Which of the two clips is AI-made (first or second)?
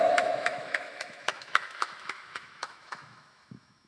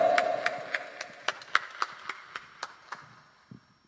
first